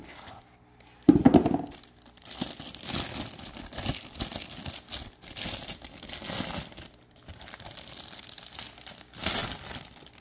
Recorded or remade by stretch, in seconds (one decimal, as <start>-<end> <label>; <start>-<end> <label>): 0.0-10.2 recorded